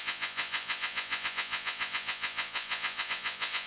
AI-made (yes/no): yes